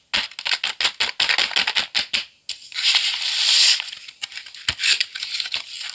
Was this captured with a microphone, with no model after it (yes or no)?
yes